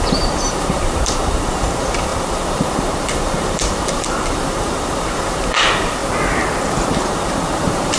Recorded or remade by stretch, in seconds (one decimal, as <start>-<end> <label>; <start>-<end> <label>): 0.0-6.0 remade; 6.0-6.9 recorded; 6.9-8.0 remade